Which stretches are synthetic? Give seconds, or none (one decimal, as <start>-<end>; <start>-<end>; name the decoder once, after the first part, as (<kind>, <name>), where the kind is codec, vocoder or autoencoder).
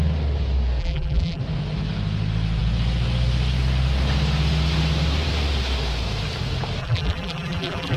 0.8-1.4 (vocoder, BigVGAN v2); 6.8-8.0